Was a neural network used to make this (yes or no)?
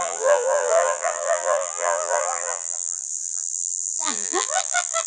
yes